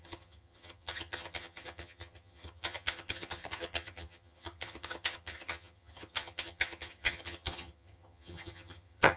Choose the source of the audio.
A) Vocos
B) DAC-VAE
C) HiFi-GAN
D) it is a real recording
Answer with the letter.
C